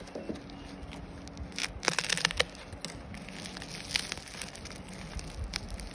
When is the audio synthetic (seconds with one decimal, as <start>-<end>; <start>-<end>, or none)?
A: none

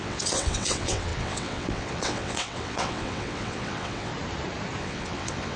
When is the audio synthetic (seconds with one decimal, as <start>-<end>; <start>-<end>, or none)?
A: 0.0-4.1; 4.8-5.6

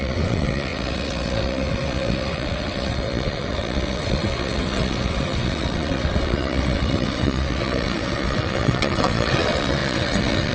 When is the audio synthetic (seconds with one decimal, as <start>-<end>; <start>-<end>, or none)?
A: 0.0-10.5

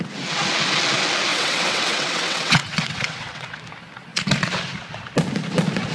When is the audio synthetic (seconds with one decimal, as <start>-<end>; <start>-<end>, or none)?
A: 1.3-3.6

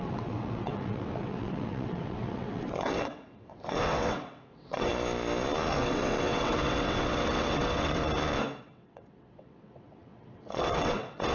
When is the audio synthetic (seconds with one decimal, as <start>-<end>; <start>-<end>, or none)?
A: 0.0-4.9; 5.7-8.0; 8.6-11.3

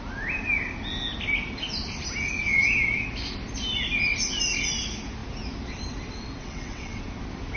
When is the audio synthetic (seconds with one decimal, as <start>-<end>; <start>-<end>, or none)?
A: 6.4-7.0